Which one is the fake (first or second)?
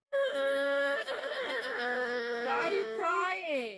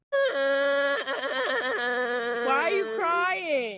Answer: first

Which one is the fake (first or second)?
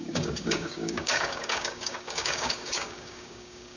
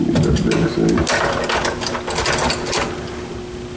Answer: first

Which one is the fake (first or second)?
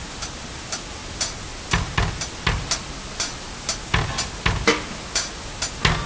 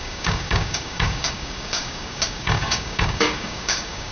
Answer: second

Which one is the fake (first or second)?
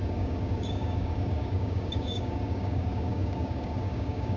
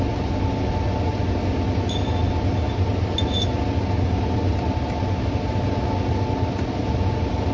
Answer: first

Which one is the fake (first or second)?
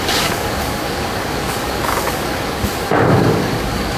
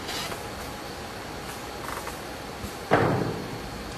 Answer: first